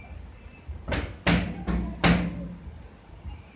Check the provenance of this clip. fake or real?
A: real